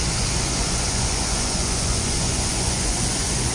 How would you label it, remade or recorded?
remade